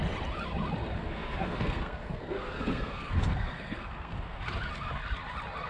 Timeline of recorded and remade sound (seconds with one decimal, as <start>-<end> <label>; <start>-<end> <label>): 0.0-1.0 recorded; 1.0-4.4 remade; 4.4-5.7 recorded